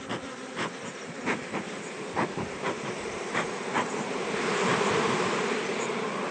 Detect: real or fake fake